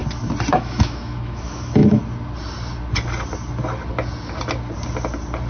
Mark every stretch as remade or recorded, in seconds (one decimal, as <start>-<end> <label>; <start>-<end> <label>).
0.0-0.5 recorded; 0.5-2.0 remade; 2.0-5.5 recorded